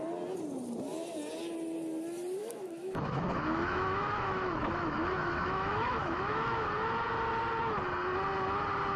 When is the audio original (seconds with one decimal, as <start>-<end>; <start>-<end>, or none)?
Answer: 0.0-2.4; 6.7-9.0